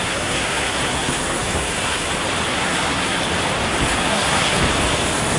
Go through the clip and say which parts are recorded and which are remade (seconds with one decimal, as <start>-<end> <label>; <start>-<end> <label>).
0.0-2.1 remade; 2.1-2.5 recorded; 2.5-3.2 remade; 3.2-4.0 recorded; 4.0-4.6 remade; 4.6-5.4 recorded